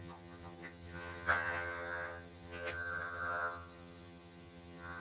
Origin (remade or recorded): remade